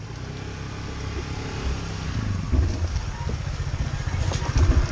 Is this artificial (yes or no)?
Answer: no